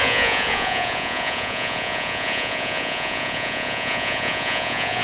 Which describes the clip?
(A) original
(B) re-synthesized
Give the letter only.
B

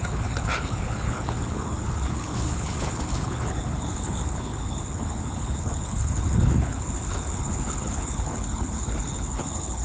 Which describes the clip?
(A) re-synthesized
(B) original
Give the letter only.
A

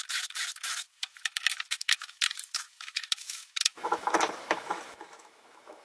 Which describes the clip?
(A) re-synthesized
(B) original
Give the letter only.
A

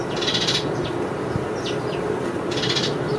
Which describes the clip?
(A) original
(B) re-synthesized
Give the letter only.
A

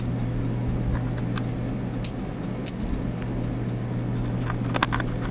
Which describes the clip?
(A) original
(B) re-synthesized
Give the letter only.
A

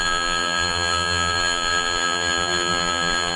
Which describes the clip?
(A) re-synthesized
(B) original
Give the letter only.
A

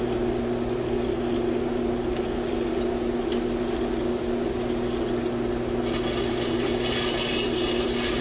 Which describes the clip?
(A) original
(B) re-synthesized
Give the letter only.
A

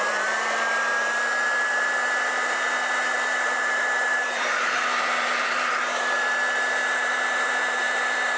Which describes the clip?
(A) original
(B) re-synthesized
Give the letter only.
B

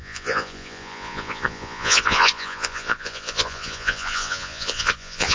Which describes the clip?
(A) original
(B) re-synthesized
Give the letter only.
B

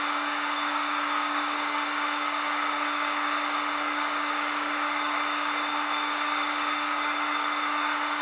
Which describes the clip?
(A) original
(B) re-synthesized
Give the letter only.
B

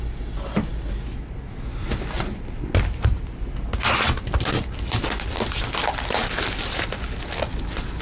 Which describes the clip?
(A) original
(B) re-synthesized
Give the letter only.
A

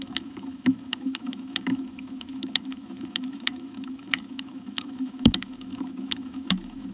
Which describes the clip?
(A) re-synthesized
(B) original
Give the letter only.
A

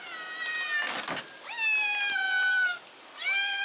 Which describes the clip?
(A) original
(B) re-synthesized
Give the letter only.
A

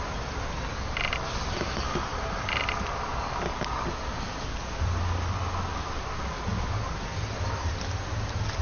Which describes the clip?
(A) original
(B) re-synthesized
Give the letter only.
A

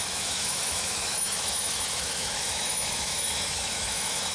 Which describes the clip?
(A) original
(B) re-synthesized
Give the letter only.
B